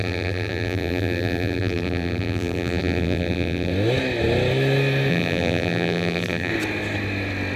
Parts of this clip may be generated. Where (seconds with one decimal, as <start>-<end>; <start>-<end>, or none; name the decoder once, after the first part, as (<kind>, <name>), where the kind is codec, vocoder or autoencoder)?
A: 0.0-3.7 (vocoder, BigVGAN v2); 5.1-6.5